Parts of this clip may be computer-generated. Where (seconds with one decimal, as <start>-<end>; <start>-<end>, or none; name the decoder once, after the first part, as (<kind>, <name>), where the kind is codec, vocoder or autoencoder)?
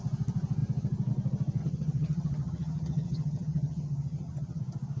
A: 1.6-4.6 (vocoder, HiFi-GAN)